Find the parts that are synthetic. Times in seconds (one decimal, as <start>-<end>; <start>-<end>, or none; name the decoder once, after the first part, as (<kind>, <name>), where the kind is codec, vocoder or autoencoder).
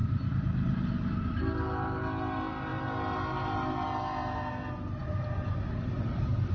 none